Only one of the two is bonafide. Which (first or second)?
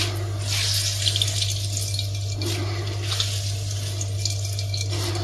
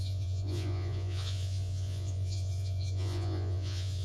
first